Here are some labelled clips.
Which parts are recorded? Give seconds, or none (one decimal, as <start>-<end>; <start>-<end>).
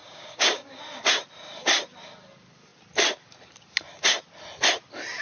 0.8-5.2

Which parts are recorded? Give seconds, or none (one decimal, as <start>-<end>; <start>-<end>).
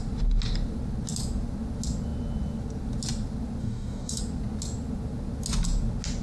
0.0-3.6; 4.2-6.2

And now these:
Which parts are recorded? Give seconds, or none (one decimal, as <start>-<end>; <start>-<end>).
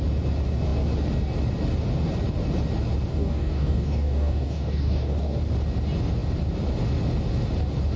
0.0-3.1; 5.4-8.0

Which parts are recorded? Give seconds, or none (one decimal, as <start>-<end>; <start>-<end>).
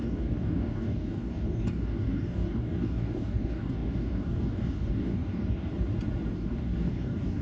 5.7-6.3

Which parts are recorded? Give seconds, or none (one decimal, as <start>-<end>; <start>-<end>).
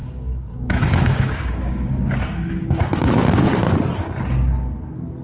3.1-5.2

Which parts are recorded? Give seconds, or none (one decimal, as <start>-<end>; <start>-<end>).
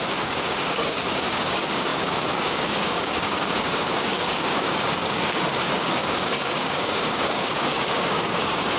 none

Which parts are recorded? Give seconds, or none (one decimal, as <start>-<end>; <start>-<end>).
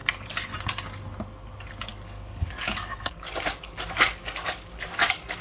0.0-1.9